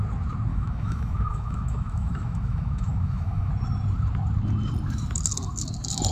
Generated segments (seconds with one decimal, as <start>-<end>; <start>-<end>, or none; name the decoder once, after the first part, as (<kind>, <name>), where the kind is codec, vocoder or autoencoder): 0.5-3.5 (autoencoder, DAC-VAE)